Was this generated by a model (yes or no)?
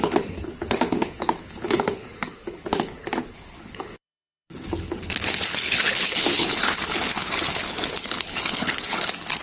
yes